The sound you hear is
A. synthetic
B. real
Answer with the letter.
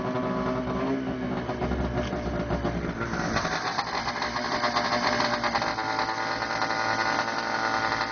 B